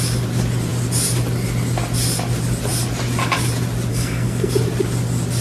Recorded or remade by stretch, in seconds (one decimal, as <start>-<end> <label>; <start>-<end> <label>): 0.0-3.9 recorded; 3.9-4.5 remade; 4.5-5.4 recorded